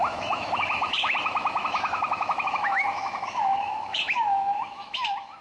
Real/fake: fake